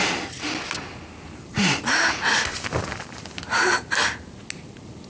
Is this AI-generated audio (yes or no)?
no